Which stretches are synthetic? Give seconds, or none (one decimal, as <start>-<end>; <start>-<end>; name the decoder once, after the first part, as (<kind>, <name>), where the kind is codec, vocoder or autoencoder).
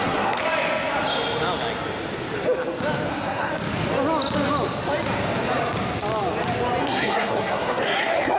0.0-0.4 (codec, SNAC); 3.1-3.5; 6.8-8.4